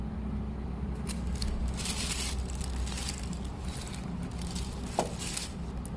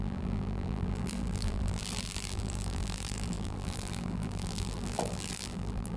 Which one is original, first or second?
first